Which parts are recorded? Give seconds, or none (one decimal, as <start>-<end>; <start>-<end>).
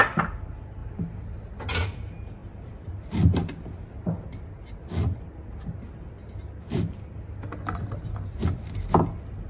0.0-0.8; 1.4-9.5